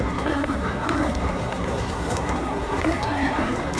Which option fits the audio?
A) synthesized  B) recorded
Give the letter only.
A